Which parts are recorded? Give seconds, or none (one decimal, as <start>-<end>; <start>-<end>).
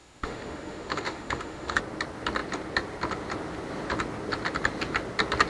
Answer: 1.8-5.5